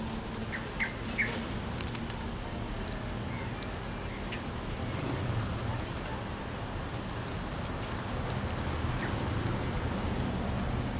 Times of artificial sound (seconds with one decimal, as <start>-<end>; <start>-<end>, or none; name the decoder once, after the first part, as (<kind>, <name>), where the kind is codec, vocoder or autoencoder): none